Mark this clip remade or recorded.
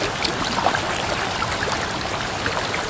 remade